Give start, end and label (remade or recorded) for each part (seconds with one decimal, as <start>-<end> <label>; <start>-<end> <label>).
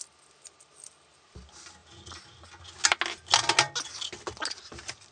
0.0-5.1 recorded